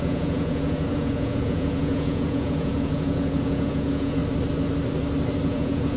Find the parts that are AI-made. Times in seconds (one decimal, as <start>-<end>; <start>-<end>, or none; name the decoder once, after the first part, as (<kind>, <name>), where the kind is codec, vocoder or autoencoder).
0.0-4.2 (vocoder, Vocos); 5.5-6.0